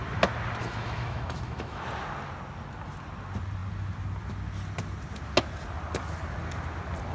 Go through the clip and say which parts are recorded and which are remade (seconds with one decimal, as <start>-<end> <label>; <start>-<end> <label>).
0.0-0.6 recorded; 0.6-1.8 remade; 1.8-7.1 recorded